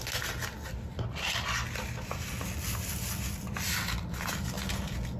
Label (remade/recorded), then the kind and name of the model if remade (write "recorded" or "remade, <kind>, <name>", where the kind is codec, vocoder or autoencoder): recorded